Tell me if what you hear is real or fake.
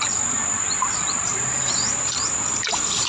real